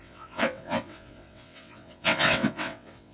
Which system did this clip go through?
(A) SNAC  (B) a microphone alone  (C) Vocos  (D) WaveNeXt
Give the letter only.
D